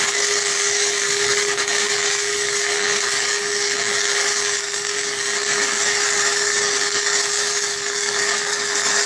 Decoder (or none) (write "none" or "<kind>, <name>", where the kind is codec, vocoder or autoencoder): codec, DAC